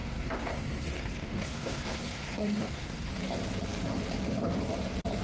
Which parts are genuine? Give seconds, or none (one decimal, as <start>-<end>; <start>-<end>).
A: 3.1-5.2